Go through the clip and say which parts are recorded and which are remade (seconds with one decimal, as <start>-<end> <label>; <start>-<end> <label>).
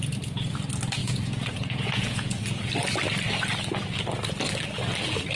0.0-1.0 recorded; 1.0-2.4 remade; 2.4-5.4 recorded